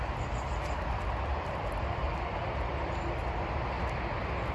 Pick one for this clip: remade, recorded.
recorded